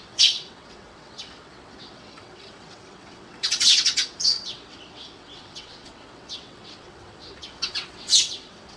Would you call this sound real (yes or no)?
no